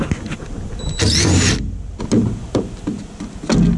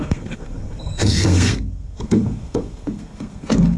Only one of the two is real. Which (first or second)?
first